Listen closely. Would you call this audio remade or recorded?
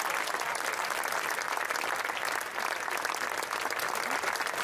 recorded